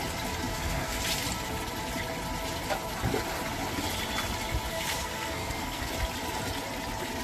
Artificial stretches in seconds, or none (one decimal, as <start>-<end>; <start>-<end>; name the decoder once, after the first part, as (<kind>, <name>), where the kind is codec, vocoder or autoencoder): 0.5-1.0 (codec, SNAC); 4.7-5.9